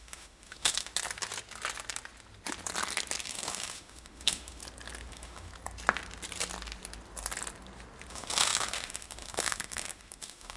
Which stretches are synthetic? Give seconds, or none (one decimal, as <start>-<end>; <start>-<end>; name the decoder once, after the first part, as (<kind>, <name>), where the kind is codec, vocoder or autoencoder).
0.0-0.9 (autoencoder, DAC-VAE); 3.2-4.6; 5.1-5.5; 8.1-10.6

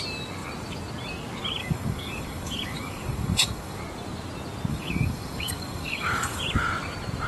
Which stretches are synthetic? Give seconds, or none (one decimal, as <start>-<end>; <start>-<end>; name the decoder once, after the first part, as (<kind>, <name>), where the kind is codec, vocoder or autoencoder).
1.6-3.8 (codec, DAC); 4.7-6.4

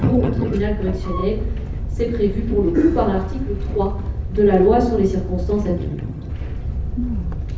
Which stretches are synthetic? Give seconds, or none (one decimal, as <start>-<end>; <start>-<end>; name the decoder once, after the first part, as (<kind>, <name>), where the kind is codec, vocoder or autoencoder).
0.0-0.6 (vocoder, HiFi-GAN); 5.7-6.3

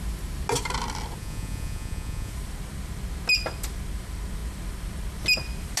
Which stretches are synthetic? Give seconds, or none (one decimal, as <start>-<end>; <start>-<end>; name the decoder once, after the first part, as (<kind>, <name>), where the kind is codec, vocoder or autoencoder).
1.2-2.3 (vocoder, Vocos)

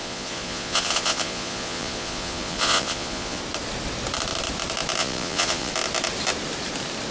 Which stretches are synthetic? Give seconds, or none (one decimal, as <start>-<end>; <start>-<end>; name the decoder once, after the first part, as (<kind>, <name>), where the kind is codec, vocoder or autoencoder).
0.0-3.4 (vocoder, Vocos); 5.0-5.7

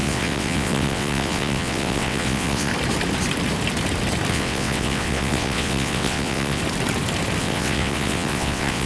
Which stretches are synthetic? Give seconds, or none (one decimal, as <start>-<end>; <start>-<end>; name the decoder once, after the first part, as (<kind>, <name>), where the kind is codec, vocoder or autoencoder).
0.0-2.7 (vocoder, WaveNeXt); 4.3-6.6; 7.4-8.9

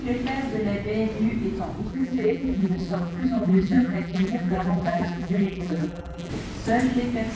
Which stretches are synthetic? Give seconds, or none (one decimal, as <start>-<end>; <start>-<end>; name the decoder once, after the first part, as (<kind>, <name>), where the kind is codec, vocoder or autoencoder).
1.9-6.3 (vocoder, BigVGAN v2)